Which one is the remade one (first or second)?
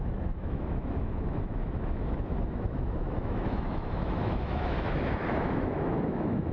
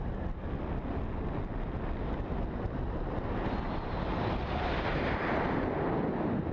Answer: first